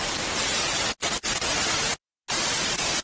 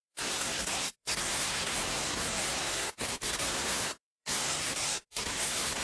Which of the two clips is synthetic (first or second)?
second